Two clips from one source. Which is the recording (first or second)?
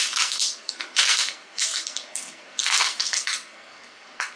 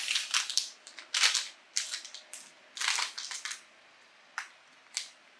second